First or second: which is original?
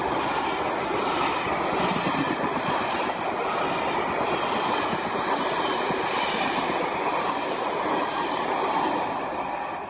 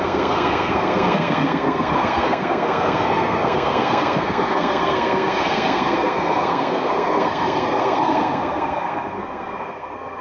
first